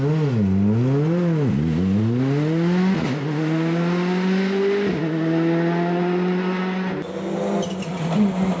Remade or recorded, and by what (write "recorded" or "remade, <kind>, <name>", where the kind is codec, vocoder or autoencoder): recorded